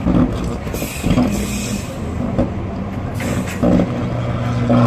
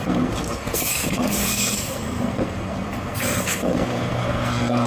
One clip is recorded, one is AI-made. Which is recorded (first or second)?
first